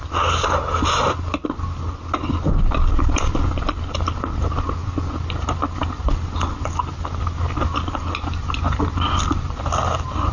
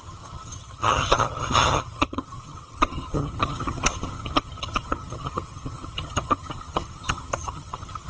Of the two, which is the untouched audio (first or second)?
first